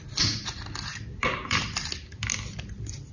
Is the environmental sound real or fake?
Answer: real